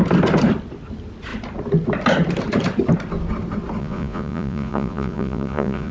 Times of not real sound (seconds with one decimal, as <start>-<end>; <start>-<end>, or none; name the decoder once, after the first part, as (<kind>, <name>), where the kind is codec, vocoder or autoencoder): 3.8-5.9 (vocoder, Vocos)

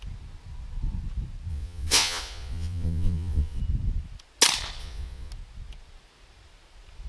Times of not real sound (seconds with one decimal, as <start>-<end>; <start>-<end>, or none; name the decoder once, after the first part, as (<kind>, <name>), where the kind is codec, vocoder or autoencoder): 1.5-3.6 (vocoder, Vocos); 4.8-5.3

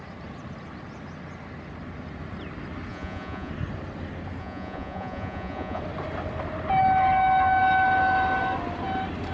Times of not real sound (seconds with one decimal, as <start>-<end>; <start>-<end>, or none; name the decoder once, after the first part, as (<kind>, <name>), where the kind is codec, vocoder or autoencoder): 2.9-3.5 (vocoder, Vocos); 4.4-5.8

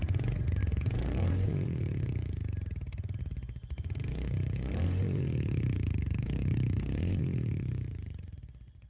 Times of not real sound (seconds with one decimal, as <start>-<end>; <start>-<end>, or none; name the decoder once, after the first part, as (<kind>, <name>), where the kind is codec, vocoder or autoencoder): 0.0-2.4 (vocoder, Vocos); 3.2-8.9

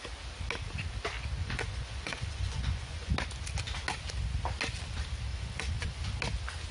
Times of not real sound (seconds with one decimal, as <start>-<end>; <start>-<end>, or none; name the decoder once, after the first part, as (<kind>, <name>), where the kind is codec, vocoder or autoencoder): 1.4-3.1 (vocoder, Vocos); 5.3-6.0